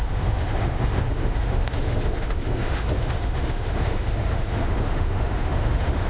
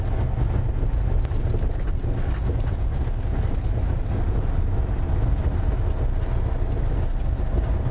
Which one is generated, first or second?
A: first